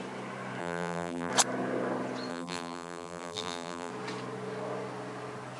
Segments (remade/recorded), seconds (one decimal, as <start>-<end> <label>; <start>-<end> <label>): 0.0-0.6 recorded; 0.6-1.3 remade; 1.3-2.3 recorded; 2.3-3.9 remade; 3.9-5.6 recorded